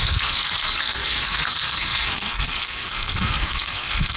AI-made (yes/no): yes